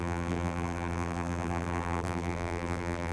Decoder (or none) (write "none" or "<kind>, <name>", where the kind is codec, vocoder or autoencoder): vocoder, BigVGAN v2